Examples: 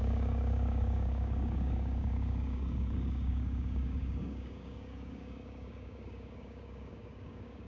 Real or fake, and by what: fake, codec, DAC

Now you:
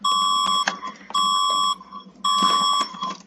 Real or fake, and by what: real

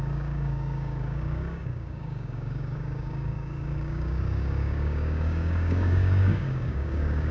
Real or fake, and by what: fake, codec, DAC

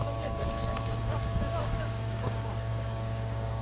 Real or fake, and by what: fake, codec, DAC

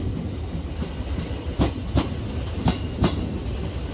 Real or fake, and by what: real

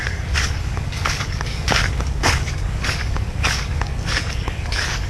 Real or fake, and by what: fake, codec, DAC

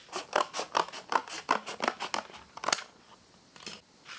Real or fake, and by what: real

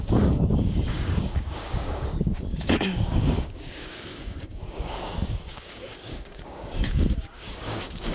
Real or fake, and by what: fake, codec, DAC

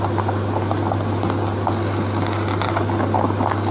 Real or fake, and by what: real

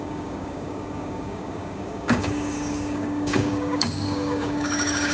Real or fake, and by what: fake, codec, DAC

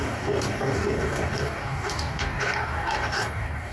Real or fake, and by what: fake, codec, DAC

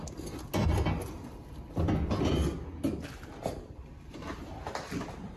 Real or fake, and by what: real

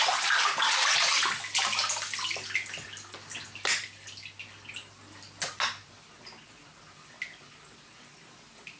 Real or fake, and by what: real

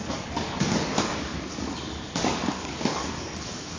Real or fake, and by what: fake, codec, DAC